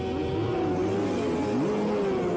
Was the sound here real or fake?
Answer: real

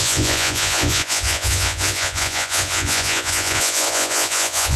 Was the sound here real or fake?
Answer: fake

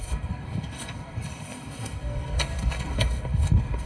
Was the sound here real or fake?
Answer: fake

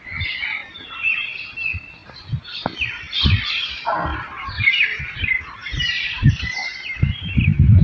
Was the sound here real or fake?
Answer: real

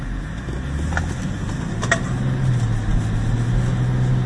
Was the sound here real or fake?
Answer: real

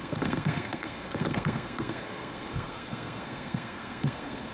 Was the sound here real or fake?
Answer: fake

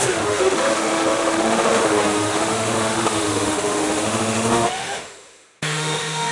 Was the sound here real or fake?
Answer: fake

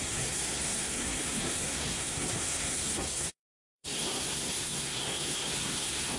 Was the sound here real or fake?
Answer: fake